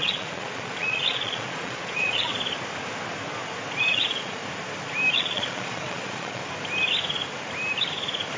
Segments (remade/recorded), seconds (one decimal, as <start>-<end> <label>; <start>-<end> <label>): 0.0-2.3 remade; 2.3-3.8 recorded; 3.8-4.4 remade; 4.4-5.1 recorded; 5.1-6.4 remade; 6.4-8.4 recorded